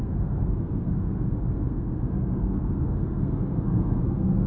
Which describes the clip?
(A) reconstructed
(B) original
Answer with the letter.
A